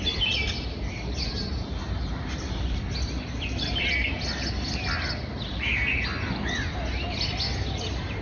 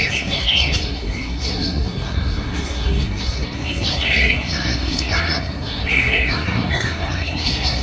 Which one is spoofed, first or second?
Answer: second